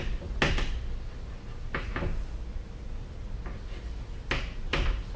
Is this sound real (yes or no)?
yes